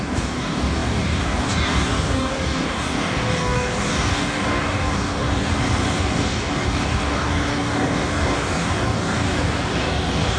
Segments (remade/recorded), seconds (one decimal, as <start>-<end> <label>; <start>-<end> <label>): 0.0-5.5 remade; 5.5-6.0 recorded; 6.0-10.4 remade